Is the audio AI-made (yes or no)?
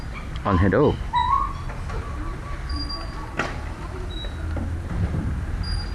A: no